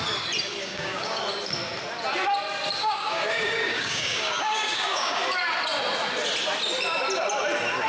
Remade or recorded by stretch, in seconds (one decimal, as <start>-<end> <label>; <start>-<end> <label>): 0.0-0.6 recorded; 0.6-1.2 remade; 1.2-2.8 recorded; 2.8-5.2 remade; 5.2-7.9 recorded

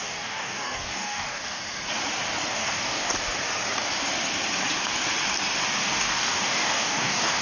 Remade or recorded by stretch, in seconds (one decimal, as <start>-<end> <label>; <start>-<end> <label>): 0.0-1.6 remade; 1.6-2.5 recorded; 2.5-3.1 remade; 3.1-5.8 recorded; 5.8-7.4 remade

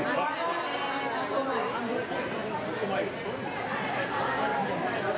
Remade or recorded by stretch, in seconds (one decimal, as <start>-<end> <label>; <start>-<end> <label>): 0.0-5.2 recorded

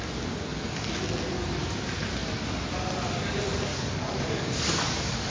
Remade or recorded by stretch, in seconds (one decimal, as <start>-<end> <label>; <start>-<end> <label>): 0.0-0.5 recorded; 0.5-1.0 remade; 1.0-3.7 recorded; 3.7-5.3 remade